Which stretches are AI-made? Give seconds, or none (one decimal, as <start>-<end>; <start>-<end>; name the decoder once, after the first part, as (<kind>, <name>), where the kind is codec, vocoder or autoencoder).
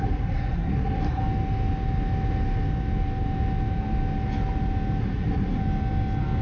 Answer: 0.0-1.2 (codec, SNAC); 5.0-5.6